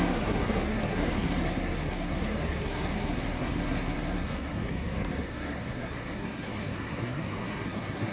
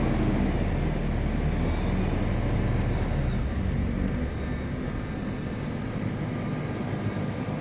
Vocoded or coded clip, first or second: first